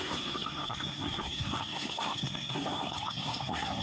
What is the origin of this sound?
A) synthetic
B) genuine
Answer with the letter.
A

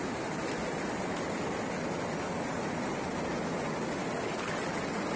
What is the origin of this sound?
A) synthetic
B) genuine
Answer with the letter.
B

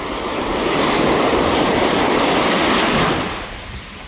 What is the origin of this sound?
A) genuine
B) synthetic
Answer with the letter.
A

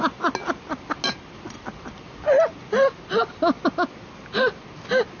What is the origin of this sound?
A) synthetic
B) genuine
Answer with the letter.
B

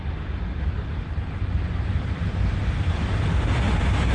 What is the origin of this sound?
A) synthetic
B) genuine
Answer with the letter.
B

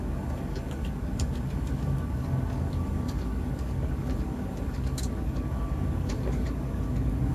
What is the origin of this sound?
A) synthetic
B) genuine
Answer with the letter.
A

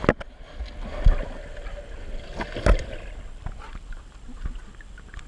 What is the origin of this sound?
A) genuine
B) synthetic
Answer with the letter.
A